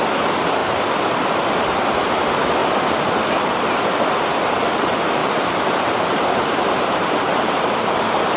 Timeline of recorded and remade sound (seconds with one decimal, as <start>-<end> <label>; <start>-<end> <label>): 0.0-5.2 recorded; 5.2-8.4 remade

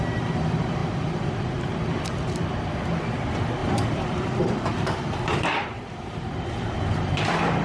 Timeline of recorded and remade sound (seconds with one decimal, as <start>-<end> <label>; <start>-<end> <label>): 0.0-7.6 remade

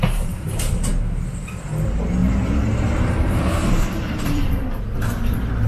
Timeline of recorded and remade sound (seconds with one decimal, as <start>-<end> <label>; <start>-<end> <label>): 0.0-2.2 recorded; 2.2-4.8 remade; 4.8-5.7 recorded

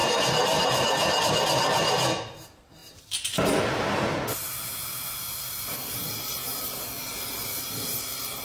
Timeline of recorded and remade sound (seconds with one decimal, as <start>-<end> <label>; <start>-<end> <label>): 0.0-1.2 recorded; 1.2-6.9 remade; 6.9-7.4 recorded; 7.4-8.4 remade

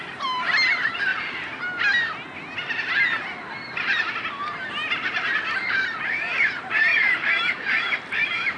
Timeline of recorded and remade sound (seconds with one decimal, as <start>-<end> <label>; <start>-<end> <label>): 0.0-1.1 remade; 1.1-5.5 recorded; 5.5-8.6 remade

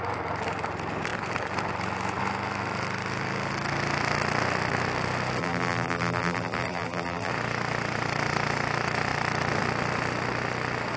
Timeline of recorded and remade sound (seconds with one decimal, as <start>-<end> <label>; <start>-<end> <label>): 0.0-5.4 recorded; 5.4-7.3 remade; 7.3-11.0 recorded

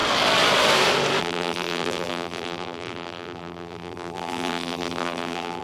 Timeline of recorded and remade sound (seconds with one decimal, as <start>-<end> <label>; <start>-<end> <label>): 0.0-1.2 recorded; 1.2-5.6 remade